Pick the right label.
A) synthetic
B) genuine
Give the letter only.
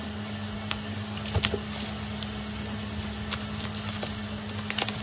B